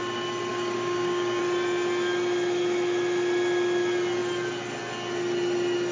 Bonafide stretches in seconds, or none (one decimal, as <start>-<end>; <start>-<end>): 0.0-0.5; 1.4-5.9